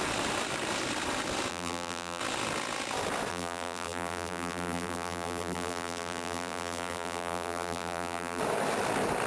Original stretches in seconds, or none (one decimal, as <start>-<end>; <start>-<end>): 0.0-1.5; 2.2-3.3; 8.4-9.3

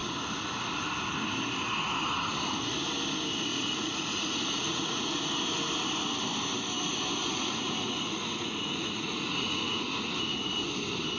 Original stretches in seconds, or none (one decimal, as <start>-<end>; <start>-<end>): 0.0-3.5; 5.2-7.2; 10.6-11.2

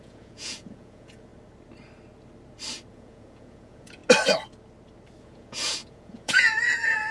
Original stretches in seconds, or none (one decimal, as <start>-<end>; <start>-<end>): 1.3-2.9; 4.0-5.2

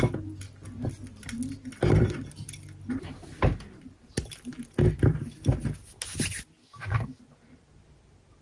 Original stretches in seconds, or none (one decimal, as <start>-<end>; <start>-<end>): 0.0-6.6; 7.2-8.4

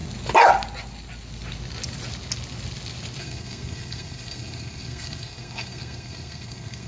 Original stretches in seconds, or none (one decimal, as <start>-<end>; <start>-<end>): 0.0-3.2

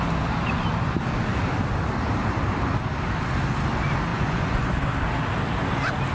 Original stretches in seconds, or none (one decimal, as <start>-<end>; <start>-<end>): 0.0-4.1; 4.7-6.1